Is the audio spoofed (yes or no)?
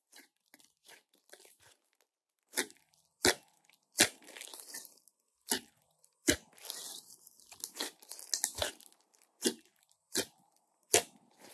no